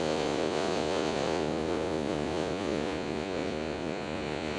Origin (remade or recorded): remade